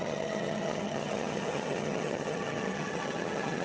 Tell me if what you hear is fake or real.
fake